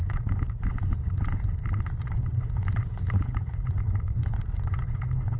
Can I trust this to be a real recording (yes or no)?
no